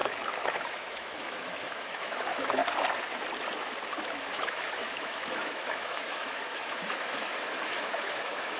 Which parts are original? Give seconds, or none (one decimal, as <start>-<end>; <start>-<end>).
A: 2.6-4.0